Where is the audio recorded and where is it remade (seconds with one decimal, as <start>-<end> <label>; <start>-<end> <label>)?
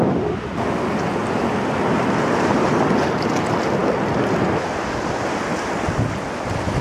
0.0-6.8 recorded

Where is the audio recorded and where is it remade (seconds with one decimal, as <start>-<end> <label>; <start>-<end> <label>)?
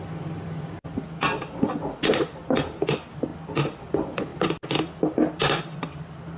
0.0-6.4 recorded